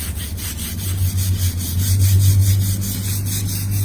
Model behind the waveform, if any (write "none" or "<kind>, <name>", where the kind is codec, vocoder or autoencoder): none